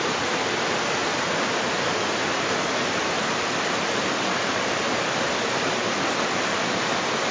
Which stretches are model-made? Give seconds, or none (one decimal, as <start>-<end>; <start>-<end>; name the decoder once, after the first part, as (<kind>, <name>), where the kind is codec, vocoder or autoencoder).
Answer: 0.0-1.0 (vocoder, BigVGAN v2); 3.1-5.9